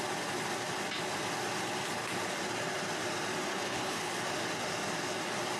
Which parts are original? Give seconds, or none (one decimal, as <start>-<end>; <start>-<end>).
0.0-3.5; 4.1-5.6